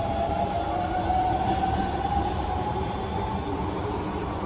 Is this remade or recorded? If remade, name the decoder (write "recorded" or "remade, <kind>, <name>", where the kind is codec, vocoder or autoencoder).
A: remade, vocoder, BigVGAN v2